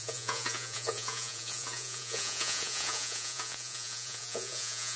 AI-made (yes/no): yes